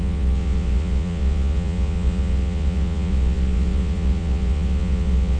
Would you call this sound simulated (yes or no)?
yes